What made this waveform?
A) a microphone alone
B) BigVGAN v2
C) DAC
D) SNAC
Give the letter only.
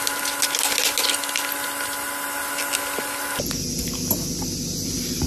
A